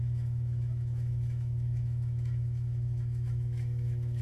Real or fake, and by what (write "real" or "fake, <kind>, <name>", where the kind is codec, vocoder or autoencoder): fake, autoencoder, DAC-VAE